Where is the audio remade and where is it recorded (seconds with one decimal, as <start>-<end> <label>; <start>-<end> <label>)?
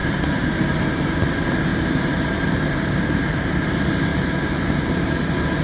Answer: 0.0-1.2 remade; 1.2-1.7 recorded; 1.7-3.5 remade; 3.5-4.1 recorded; 4.1-4.7 remade; 4.7-5.6 recorded